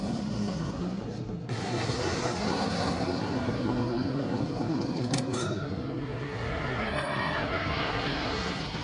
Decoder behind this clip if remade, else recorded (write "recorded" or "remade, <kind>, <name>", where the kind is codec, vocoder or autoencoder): remade, codec, SNAC